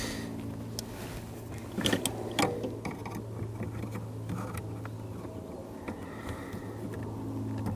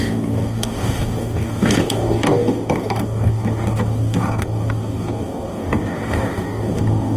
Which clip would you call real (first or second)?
first